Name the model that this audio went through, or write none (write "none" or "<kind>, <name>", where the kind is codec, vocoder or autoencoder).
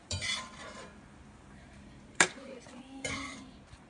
vocoder, BigVGAN v2